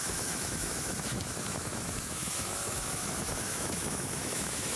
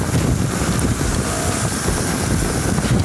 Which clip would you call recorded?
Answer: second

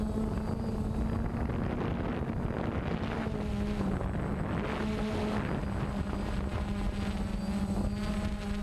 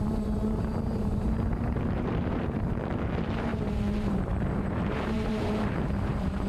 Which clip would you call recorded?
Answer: first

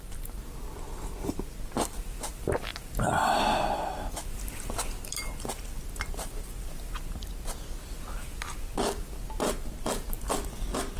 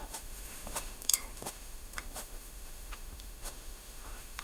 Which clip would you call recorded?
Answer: first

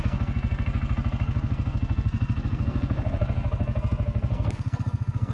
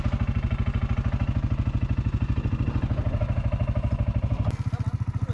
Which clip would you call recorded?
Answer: second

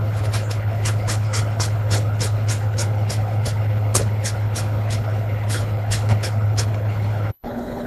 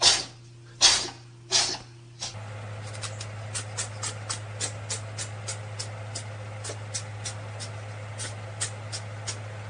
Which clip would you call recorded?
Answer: second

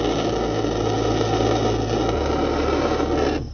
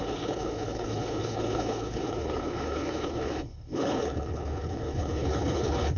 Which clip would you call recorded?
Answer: first